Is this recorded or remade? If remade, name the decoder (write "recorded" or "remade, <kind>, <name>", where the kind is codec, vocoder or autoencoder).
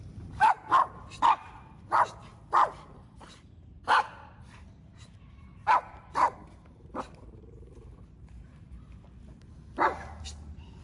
remade, vocoder, BigVGAN v2